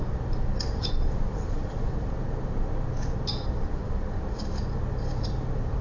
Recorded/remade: recorded